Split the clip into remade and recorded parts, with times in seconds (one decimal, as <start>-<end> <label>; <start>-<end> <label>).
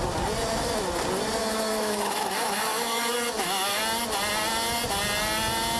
0.0-1.4 recorded; 1.4-3.8 remade; 3.8-5.8 recorded